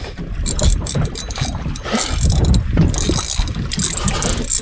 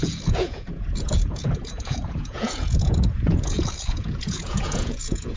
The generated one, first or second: second